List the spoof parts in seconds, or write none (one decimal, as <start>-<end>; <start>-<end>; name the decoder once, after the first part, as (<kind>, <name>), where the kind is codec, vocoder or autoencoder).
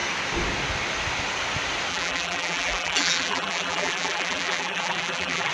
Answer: 1.9-5.5 (vocoder, BigVGAN v2)